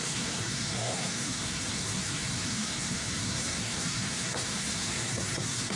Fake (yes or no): yes